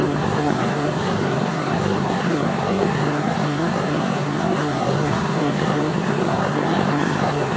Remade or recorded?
remade